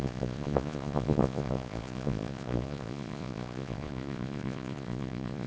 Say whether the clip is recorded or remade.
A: remade